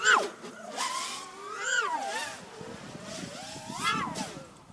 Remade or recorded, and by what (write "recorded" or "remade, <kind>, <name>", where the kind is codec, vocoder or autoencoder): recorded